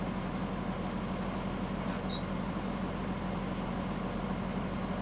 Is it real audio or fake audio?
real